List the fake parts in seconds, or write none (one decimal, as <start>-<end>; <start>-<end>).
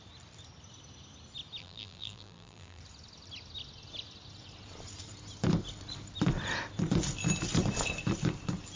1.6-2.8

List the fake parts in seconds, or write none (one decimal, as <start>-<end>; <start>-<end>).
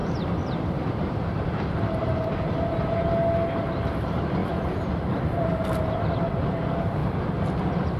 0.0-1.9; 4.4-5.8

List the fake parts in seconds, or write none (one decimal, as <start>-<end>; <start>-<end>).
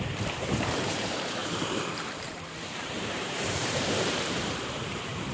0.0-5.3